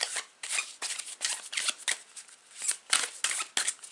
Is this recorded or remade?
recorded